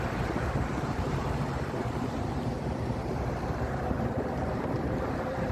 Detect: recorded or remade remade